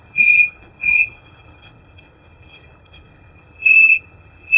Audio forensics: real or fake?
fake